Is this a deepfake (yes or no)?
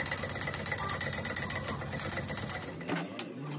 no